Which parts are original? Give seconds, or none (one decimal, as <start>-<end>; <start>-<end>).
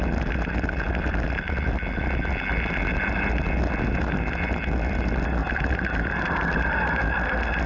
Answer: 0.0-7.7